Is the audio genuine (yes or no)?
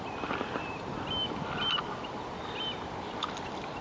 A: yes